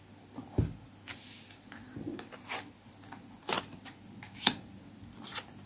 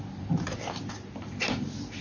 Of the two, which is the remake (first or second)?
second